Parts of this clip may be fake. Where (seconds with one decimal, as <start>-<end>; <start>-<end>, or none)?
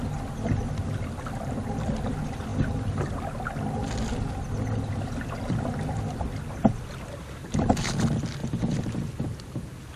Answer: none